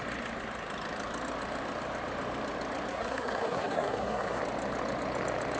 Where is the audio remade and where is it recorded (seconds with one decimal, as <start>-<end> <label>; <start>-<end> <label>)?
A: 0.0-2.9 recorded; 2.9-4.4 remade; 4.4-5.6 recorded